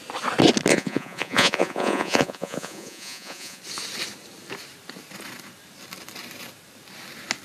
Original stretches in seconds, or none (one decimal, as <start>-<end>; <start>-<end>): 0.0-0.7; 3.6-7.4